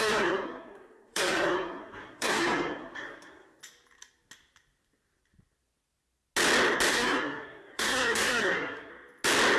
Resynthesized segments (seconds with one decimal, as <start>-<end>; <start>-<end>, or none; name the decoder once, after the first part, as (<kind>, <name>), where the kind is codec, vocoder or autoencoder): 0.0-3.6 (codec, SNAC); 6.9-8.9